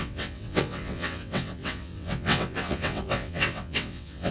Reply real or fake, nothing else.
fake